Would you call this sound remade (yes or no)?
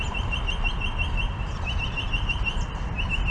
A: no